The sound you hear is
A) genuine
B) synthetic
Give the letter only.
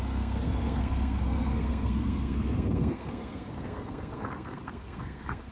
B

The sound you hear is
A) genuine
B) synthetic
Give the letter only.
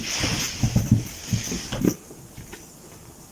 A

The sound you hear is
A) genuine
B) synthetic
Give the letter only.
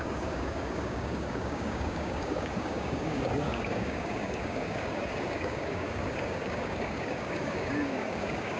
B